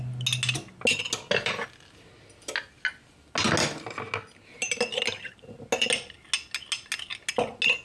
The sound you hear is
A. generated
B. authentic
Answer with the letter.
B